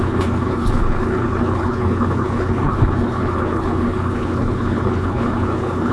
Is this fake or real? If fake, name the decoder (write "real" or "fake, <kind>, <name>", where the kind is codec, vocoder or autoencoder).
fake, codec, HILCodec